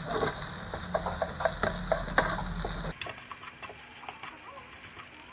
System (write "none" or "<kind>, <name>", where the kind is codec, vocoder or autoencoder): none